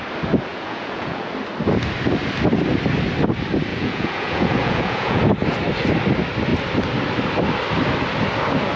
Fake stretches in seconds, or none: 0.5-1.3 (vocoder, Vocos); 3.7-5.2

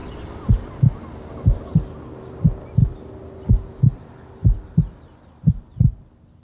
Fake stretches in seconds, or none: none

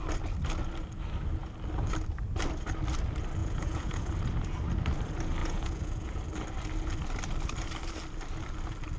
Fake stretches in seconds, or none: 3.4-4.1 (vocoder, Vocos); 5.4-6.2

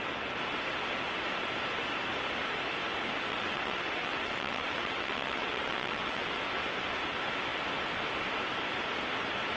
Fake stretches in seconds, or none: 3.3-6.4 (vocoder, WaveNeXt)